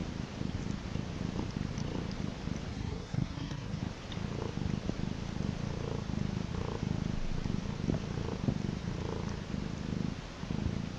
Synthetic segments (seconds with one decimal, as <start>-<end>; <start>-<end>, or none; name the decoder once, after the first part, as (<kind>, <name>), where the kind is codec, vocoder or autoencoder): 2.7-3.8 (codec, SNAC)